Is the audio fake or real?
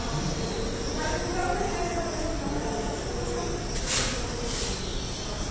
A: real